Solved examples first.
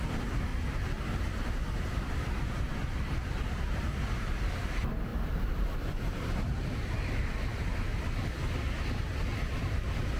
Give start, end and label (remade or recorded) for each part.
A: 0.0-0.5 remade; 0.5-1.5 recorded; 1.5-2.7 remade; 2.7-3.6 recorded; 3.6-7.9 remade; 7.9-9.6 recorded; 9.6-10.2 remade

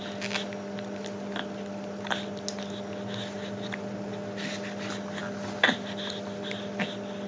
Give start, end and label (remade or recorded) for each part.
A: 0.0-7.3 recorded

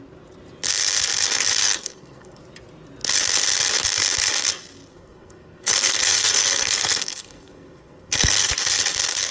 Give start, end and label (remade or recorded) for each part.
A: 0.0-1.6 recorded; 1.6-2.4 remade; 2.4-4.9 recorded; 4.9-8.5 remade; 8.5-9.3 recorded